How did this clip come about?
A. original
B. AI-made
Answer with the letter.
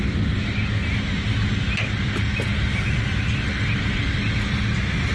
A